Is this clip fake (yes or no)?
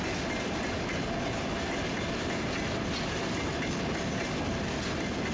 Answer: no